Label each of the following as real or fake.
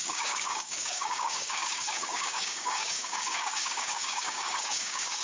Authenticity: fake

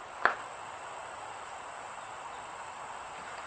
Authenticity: real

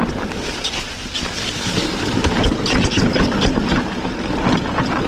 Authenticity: real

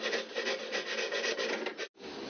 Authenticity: real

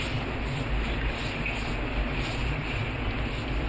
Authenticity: real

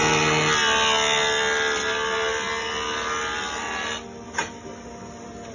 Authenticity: real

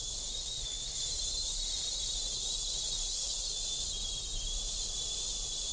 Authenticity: real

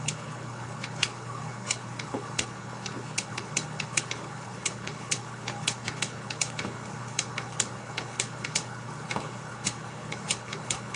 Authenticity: fake